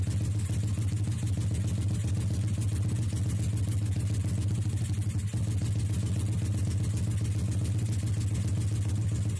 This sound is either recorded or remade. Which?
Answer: recorded